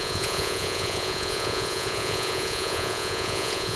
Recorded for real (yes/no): no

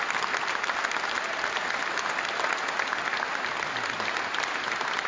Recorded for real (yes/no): yes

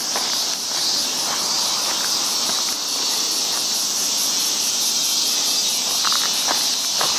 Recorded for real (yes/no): no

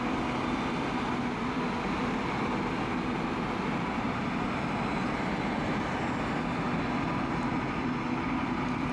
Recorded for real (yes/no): yes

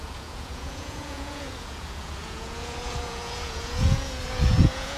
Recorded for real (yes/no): no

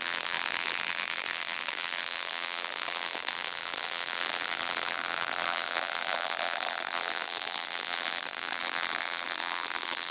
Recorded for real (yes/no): no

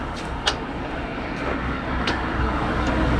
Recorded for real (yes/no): no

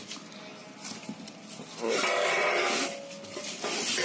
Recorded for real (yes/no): yes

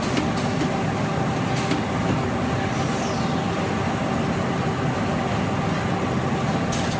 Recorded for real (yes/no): yes